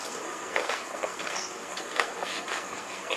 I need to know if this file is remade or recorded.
remade